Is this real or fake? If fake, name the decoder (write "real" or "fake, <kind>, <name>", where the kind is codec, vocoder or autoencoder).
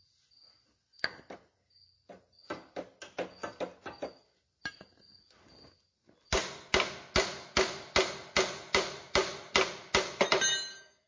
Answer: real